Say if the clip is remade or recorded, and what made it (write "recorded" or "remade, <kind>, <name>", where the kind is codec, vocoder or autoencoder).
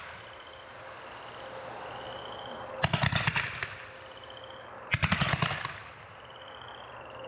recorded